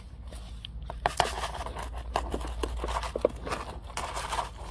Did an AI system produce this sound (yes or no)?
no